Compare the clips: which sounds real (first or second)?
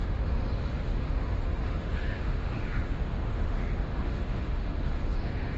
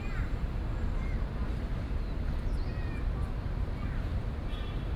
second